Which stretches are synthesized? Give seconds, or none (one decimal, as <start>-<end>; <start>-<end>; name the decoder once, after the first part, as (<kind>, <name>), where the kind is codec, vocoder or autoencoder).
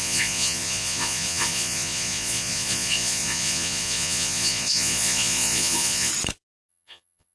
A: 0.0-6.1 (vocoder, Vocos); 6.7-7.3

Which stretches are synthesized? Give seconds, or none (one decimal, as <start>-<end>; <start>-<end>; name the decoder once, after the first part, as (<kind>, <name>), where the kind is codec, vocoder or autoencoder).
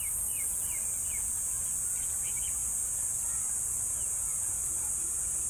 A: 2.6-4.6 (vocoder, Vocos)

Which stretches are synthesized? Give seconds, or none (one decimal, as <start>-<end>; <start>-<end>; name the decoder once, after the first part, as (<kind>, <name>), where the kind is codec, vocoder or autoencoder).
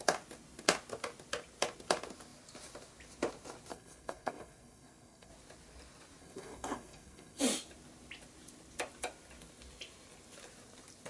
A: 3.7-5.3 (codec, SNAC); 6.2-7.4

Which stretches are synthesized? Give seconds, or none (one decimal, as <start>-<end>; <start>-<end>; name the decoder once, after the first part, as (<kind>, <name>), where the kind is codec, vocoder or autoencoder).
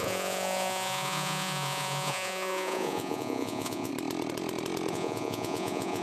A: 0.0-3.9 (vocoder, Vocos); 4.9-6.0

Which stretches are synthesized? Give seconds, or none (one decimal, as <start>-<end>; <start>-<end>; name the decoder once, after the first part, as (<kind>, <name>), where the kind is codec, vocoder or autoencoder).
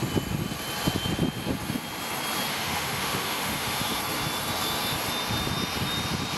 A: 2.5-4.0 (autoencoder, DAC-VAE)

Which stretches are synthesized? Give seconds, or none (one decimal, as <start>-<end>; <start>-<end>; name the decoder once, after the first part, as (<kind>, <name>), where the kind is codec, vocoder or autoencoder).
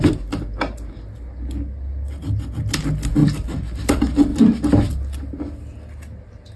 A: 3.2-3.8 (vocoder, BigVGAN v2); 4.3-4.9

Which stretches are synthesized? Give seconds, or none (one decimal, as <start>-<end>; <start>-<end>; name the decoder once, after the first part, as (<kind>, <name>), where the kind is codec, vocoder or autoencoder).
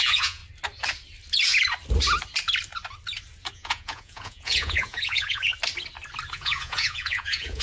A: 0.0-0.4 (vocoder, Vocos); 3.5-5.5; 6.3-7.6